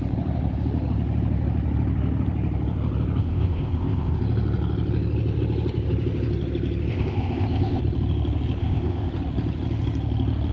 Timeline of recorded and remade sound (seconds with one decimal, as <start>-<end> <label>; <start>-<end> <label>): 0.0-3.2 recorded; 3.2-4.2 remade; 4.2-6.9 recorded; 6.9-7.8 remade; 7.8-8.6 recorded; 8.6-9.1 remade; 9.1-10.5 recorded